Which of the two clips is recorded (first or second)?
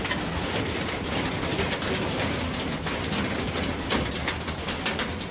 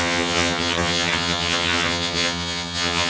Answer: first